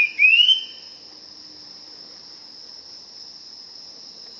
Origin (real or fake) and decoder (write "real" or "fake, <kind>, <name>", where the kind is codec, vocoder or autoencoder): real